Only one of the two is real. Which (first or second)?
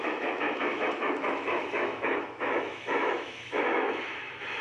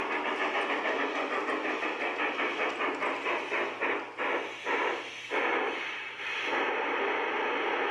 second